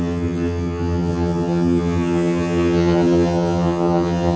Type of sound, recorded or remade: remade